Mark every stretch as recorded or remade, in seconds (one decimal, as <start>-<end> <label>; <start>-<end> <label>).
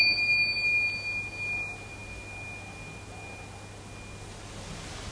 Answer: 0.0-5.1 recorded